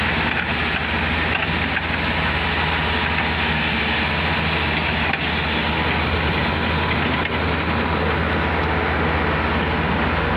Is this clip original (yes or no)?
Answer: yes